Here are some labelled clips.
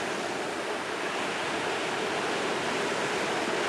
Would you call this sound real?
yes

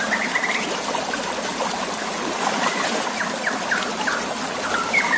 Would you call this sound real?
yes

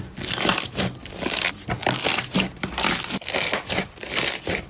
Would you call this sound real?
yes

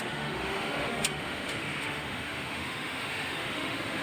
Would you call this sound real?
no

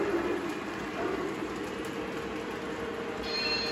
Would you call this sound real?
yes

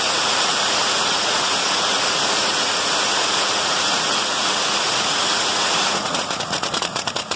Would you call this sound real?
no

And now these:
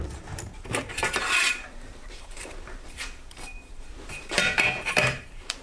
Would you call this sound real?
no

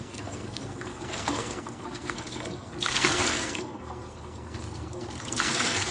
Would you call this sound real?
no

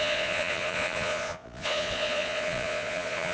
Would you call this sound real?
no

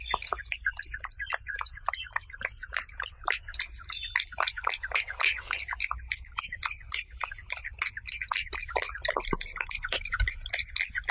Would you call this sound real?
yes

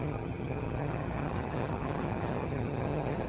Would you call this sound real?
no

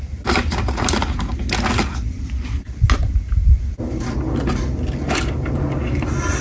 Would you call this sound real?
yes